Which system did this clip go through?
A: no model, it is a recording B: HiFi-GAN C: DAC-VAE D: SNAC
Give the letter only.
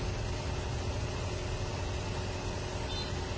A